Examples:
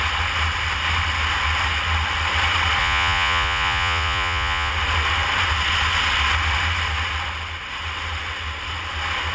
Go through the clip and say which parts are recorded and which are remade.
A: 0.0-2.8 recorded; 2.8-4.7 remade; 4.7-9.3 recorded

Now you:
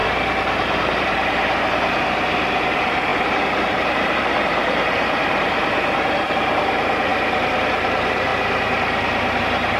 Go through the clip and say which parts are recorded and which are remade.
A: 0.0-7.1 remade; 7.1-7.7 recorded; 7.7-8.3 remade; 8.3-9.4 recorded; 9.4-9.8 remade

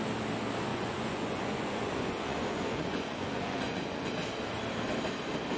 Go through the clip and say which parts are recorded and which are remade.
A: 0.0-0.7 recorded; 0.7-4.1 remade; 4.1-5.6 recorded